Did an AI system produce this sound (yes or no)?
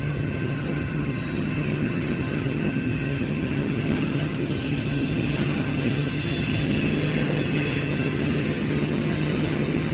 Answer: yes